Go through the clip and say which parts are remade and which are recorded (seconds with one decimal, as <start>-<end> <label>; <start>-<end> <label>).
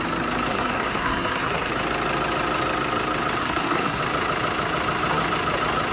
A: 0.0-0.5 recorded; 0.5-1.7 remade; 1.7-3.4 recorded; 3.4-4.0 remade; 4.0-5.9 recorded